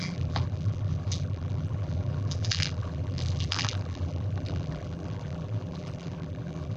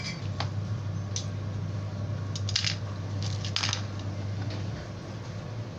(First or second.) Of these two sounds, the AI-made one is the first